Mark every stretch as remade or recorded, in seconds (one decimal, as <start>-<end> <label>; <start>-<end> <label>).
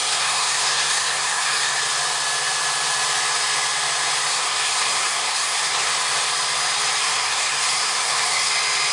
0.0-1.8 remade; 1.8-4.3 recorded; 4.3-5.9 remade; 5.9-7.0 recorded; 7.0-8.5 remade; 8.5-8.9 recorded